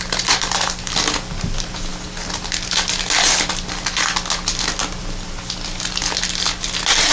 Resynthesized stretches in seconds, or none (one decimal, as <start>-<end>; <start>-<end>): none